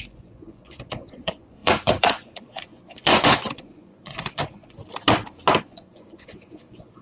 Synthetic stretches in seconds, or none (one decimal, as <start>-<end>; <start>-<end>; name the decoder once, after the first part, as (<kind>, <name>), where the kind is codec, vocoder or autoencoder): 0.0-4.8 (vocoder, Vocos); 5.6-7.0